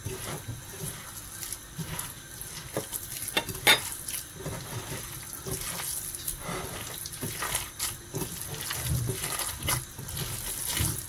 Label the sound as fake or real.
real